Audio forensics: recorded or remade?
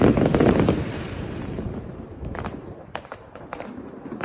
remade